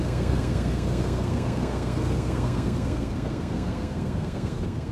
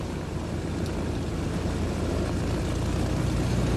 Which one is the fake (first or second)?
first